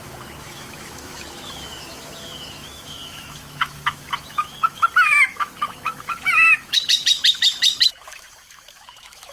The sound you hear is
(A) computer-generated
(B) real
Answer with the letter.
A